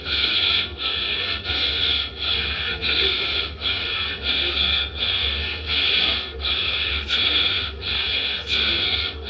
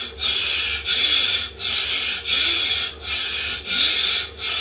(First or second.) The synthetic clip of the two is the first